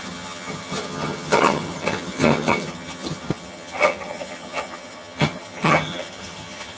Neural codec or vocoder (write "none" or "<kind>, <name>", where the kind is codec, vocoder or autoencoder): vocoder, HiFi-GAN